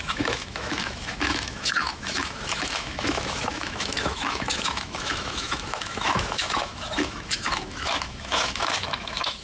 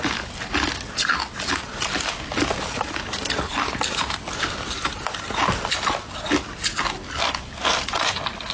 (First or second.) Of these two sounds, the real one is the second